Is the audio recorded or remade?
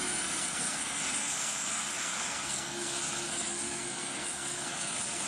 remade